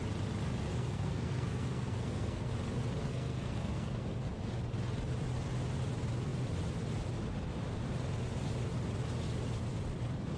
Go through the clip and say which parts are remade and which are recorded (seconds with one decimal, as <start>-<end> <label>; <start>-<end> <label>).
0.0-0.7 recorded; 0.7-2.5 remade; 2.5-3.0 recorded; 3.0-4.3 remade; 4.3-10.4 recorded